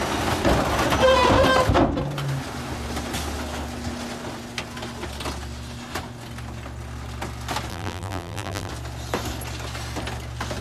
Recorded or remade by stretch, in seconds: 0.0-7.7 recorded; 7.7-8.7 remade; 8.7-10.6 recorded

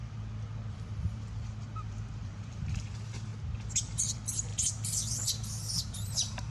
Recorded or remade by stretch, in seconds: 0.0-0.7 recorded; 0.7-3.3 remade; 3.3-3.8 recorded; 3.8-6.5 remade

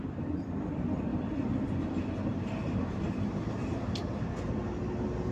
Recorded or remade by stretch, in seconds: 0.0-1.1 recorded; 1.1-4.3 remade; 4.3-5.3 recorded

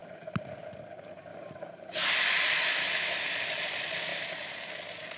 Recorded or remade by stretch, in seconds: 0.0-0.6 remade; 0.6-1.3 recorded; 1.3-2.1 remade; 2.1-4.1 recorded; 4.1-4.7 remade; 4.7-5.2 recorded